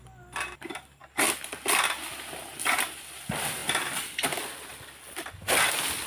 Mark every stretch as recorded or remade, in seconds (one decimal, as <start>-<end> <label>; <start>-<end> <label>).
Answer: 0.0-1.0 remade; 1.0-2.1 recorded; 2.1-6.1 remade